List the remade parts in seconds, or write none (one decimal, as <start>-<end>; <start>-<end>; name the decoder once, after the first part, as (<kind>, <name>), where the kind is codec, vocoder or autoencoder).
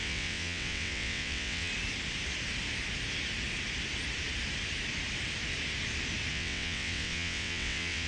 0.0-1.7 (vocoder, WaveNeXt); 6.3-8.1